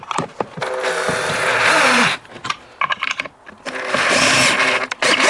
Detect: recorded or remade recorded